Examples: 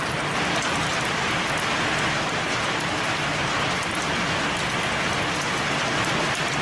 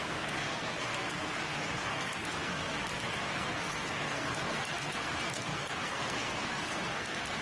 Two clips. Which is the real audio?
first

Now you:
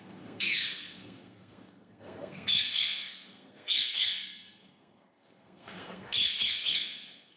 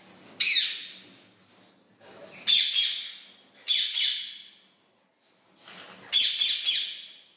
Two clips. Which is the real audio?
second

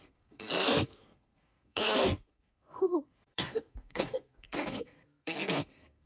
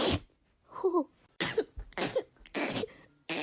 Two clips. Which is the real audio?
second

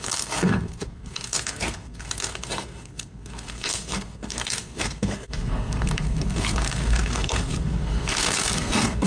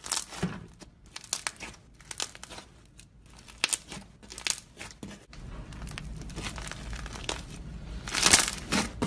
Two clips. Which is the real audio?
second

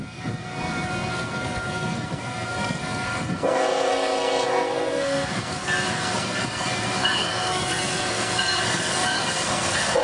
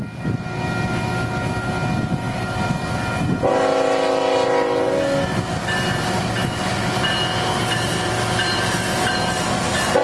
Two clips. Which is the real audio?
second